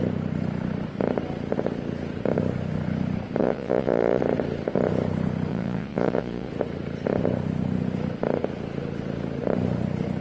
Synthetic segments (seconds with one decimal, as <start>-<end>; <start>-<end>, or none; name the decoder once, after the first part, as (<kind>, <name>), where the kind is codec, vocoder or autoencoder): 3.4-4.2 (vocoder, Vocos); 5.5-6.5